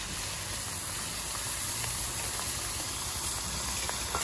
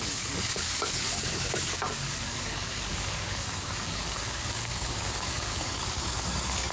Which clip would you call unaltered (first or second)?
first